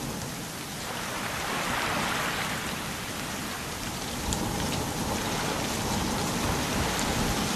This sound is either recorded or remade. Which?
recorded